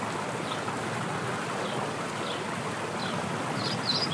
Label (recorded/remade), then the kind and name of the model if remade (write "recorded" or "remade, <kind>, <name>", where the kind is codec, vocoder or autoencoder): recorded